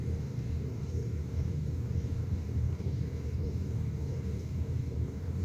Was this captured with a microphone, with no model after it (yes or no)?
no